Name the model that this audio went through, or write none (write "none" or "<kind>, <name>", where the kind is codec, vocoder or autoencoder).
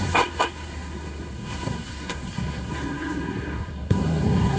codec, SNAC